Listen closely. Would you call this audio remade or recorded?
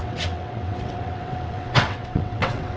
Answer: remade